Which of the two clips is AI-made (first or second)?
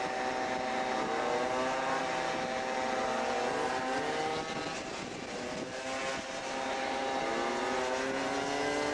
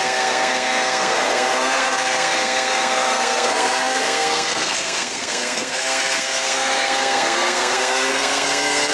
second